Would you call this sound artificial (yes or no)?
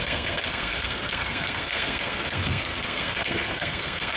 yes